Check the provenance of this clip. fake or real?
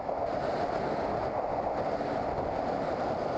real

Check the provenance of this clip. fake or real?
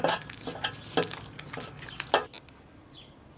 real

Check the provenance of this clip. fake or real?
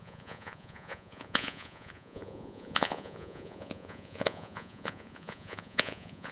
fake